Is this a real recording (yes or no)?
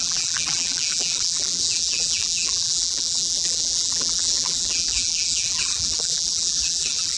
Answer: no